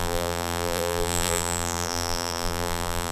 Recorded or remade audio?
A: remade